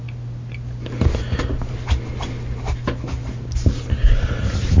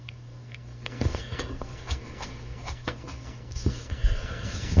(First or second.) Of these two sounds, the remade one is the second